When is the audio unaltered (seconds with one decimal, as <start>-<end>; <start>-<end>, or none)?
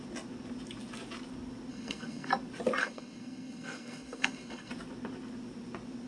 0.0-1.7; 2.3-2.8; 4.7-6.1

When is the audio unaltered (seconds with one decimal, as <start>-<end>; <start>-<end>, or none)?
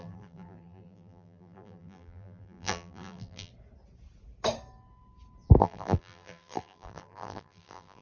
3.5-5.6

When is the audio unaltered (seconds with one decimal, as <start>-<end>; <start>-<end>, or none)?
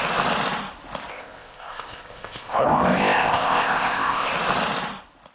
0.0-1.1; 4.3-5.3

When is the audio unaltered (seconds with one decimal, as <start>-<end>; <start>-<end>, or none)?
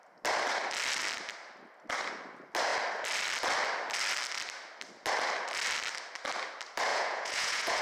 0.0-6.9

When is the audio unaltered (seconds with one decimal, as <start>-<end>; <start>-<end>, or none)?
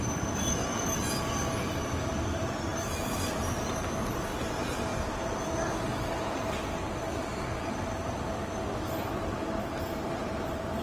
4.9-10.1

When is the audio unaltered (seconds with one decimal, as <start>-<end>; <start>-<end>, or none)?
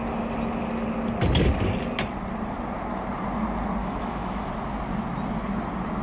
0.0-3.8; 4.5-6.0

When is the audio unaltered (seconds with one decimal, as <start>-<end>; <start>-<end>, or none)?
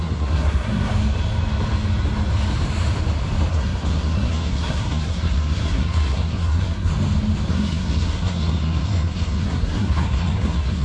0.9-3.5; 6.9-7.5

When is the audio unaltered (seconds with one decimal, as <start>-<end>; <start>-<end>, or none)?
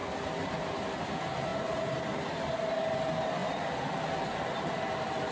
0.0-5.3